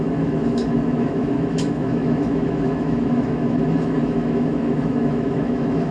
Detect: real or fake fake